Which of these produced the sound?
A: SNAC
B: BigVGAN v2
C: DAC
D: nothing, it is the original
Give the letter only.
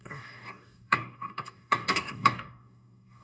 C